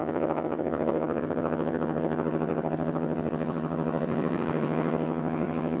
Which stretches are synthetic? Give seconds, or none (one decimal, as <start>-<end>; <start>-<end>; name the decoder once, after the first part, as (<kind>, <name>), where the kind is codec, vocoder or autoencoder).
0.0-5.8 (vocoder, HiFi-GAN)